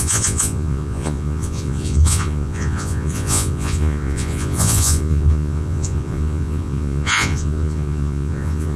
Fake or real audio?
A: fake